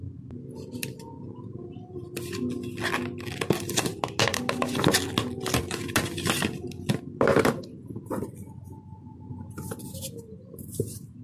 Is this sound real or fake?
real